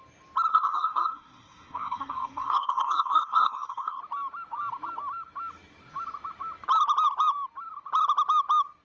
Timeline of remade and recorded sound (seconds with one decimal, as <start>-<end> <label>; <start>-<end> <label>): 0.0-0.5 recorded; 0.5-4.0 remade; 4.0-8.8 recorded